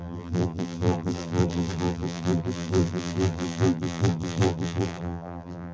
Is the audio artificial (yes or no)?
yes